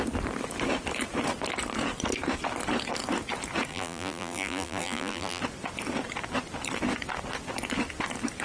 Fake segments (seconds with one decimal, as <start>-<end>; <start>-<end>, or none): 3.7-5.4